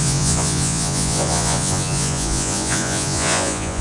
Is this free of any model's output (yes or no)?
no